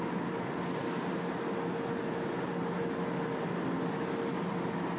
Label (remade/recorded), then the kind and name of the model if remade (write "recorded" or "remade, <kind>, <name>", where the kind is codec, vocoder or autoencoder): recorded